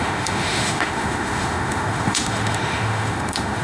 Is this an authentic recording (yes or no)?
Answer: no